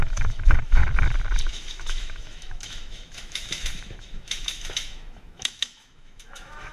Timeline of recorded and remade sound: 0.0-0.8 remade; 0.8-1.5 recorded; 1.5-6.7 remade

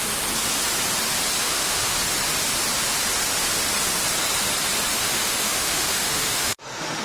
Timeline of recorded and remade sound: 0.0-1.4 recorded; 1.4-1.9 remade; 1.9-4.9 recorded; 4.9-7.0 remade